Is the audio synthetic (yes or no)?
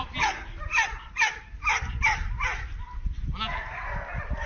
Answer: no